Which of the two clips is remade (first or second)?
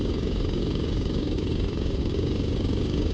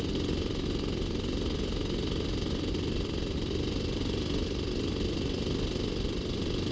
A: first